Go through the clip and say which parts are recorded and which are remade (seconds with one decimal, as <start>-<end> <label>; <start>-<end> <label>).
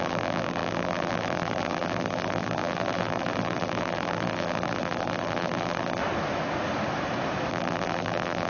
0.0-6.0 remade; 6.0-7.5 recorded; 7.5-8.5 remade